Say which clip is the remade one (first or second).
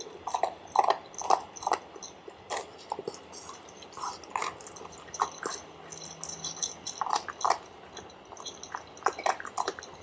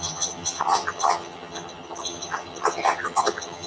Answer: second